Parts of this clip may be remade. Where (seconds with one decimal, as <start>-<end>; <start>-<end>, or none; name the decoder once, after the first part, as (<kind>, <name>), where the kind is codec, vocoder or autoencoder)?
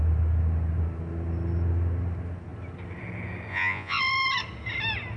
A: 3.5-4.0 (vocoder, Vocos)